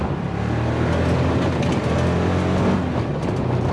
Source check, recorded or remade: recorded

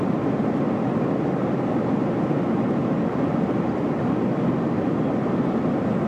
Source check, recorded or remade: recorded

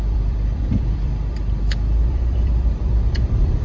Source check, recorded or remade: remade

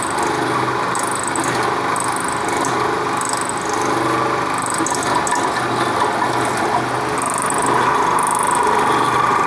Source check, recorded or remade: recorded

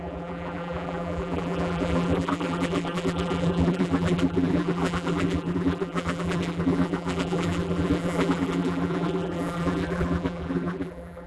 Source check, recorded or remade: remade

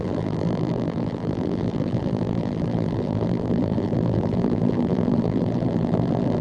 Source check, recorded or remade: remade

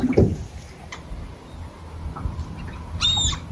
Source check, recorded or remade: recorded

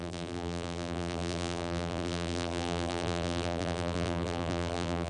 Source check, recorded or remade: remade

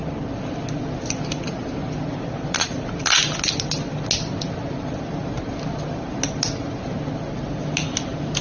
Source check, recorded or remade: recorded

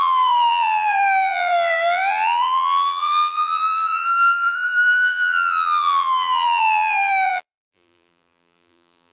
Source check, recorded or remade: remade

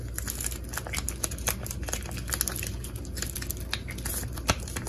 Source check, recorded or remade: recorded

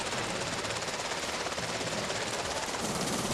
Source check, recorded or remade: remade